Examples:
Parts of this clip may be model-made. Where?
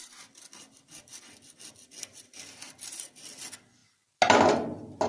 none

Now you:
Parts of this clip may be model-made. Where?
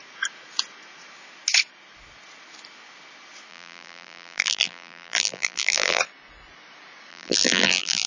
3.5-6.0 (vocoder, BigVGAN v2); 7.1-8.1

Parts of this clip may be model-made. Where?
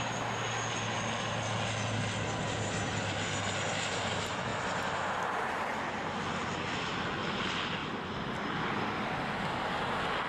2.4-3.1 (vocoder, BigVGAN v2)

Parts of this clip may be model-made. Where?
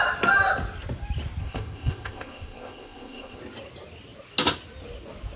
1.4-3.4 (codec, ZipCodec)